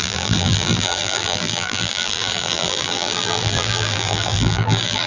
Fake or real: fake